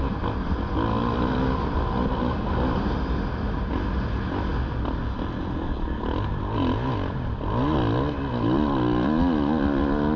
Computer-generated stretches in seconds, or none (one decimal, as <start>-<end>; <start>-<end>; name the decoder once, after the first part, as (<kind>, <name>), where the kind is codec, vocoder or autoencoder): none